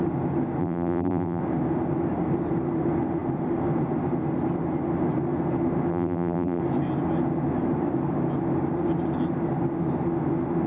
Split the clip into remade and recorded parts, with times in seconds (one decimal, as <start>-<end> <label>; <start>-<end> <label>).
0.0-0.6 recorded; 0.6-1.4 remade; 1.4-5.9 recorded; 5.9-6.6 remade; 6.6-10.7 recorded